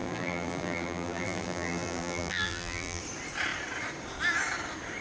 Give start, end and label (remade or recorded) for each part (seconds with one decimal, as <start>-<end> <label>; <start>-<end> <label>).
0.0-3.0 remade; 3.0-5.0 recorded